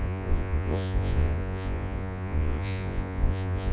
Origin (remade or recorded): remade